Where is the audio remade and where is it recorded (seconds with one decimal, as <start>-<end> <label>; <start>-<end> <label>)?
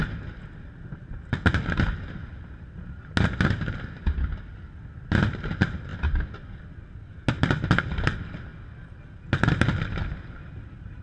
0.0-11.0 recorded